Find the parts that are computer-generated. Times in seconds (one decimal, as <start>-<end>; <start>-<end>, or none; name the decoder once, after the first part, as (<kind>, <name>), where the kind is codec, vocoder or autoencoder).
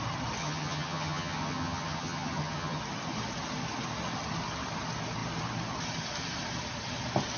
0.4-2.8 (vocoder, HiFi-GAN)